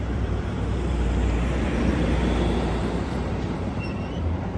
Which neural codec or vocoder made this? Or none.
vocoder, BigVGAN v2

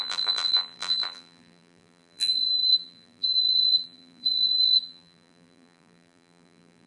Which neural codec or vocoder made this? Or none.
vocoder, BigVGAN v2